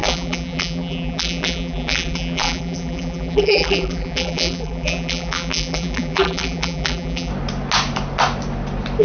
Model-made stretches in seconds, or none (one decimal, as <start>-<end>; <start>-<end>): 0.0-7.3

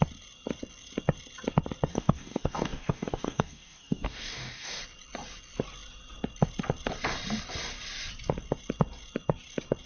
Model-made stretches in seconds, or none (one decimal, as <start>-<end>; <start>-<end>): 1.9-4.8